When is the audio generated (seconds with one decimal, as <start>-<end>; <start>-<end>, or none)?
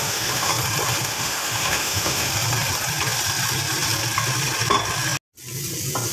0.0-0.5; 1.0-2.3